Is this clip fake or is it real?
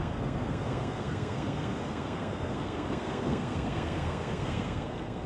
fake